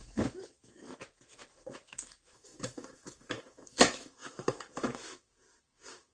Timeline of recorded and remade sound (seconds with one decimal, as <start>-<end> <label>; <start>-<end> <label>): 0.0-6.1 remade